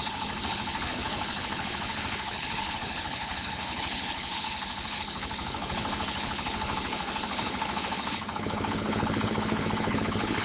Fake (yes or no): yes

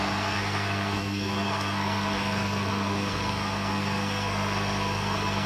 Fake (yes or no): yes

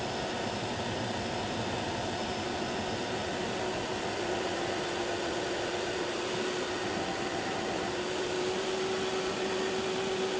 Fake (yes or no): no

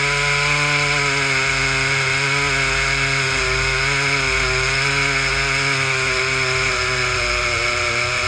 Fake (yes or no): no